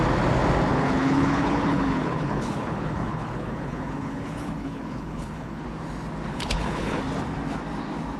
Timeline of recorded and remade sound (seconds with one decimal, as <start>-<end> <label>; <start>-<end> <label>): 0.0-0.7 recorded; 0.7-5.6 remade; 5.6-6.3 recorded; 6.3-7.0 remade; 7.0-8.2 recorded